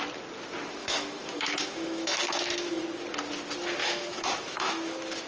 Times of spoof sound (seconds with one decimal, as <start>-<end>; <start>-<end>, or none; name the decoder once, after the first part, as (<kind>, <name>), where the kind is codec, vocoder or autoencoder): 0.8-2.8 (autoencoder, DAC-VAE); 3.8-5.3